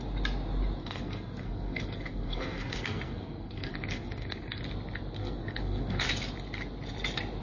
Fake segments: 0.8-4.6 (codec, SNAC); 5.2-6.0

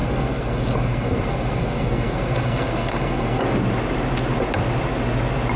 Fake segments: 0.0-3.4 (codec, SNAC)

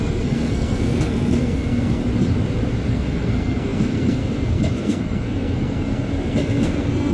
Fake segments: 0.0-2.0 (codec, SNAC); 2.9-7.1